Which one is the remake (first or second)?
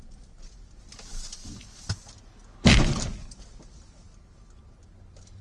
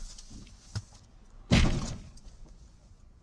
second